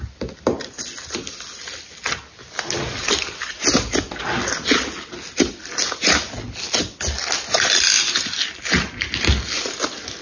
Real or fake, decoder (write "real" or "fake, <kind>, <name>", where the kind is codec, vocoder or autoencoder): real